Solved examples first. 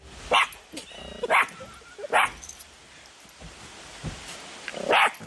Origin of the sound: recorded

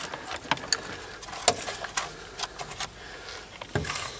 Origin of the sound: recorded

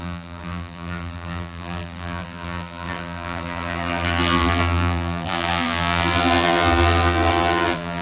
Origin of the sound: remade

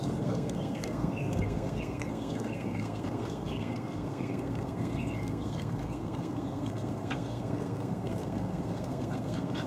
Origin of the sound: remade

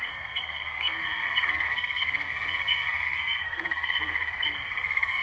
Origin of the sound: remade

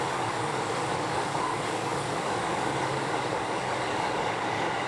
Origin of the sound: remade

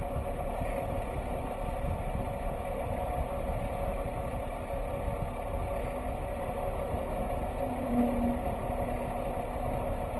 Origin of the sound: recorded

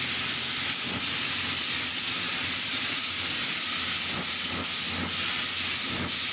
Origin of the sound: recorded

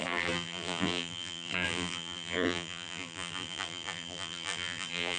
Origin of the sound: remade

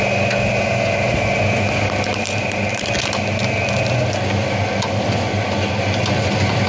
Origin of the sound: recorded